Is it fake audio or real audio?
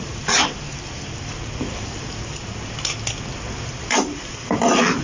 real